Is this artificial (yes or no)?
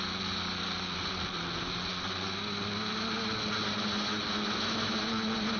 no